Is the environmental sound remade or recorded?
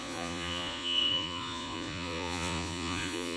remade